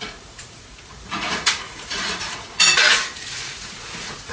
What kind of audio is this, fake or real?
fake